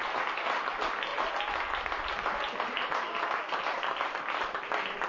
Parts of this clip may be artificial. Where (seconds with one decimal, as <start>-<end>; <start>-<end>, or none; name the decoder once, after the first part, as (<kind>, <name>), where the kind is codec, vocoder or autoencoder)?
none